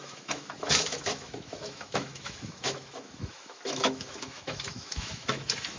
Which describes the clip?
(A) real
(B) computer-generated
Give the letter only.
B